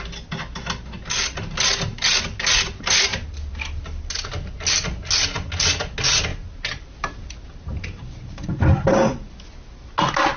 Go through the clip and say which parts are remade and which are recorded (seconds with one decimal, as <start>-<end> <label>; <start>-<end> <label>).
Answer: 0.0-3.1 recorded; 3.1-4.1 remade; 4.1-6.3 recorded; 6.3-9.3 remade; 9.3-10.4 recorded

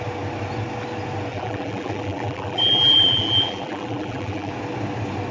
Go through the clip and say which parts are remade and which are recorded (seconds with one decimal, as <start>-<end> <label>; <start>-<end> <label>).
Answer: 0.0-1.3 recorded; 1.3-4.5 remade; 4.5-5.3 recorded

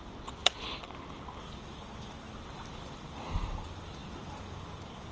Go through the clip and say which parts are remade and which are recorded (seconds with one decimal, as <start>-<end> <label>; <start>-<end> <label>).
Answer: 0.0-5.1 remade

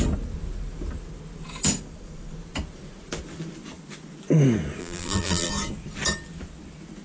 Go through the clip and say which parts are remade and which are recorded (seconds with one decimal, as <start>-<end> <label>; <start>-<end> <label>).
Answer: 0.0-4.8 recorded; 4.8-5.5 remade; 5.5-7.0 recorded